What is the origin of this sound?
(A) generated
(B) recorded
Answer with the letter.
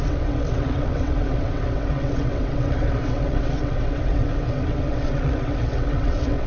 A